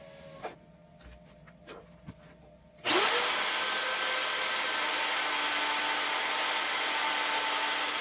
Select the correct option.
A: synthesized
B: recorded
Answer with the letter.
B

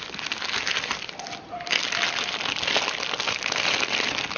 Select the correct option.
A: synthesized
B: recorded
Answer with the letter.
B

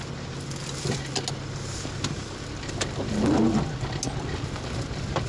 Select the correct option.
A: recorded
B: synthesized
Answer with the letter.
A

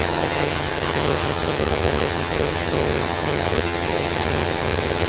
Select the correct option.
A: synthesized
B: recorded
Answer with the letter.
A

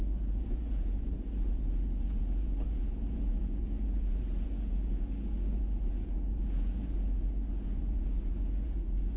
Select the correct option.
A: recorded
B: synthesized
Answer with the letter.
B